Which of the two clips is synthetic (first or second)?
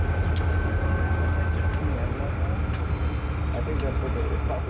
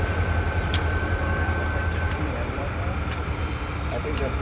second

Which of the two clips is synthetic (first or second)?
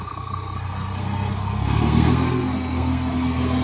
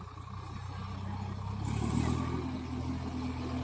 first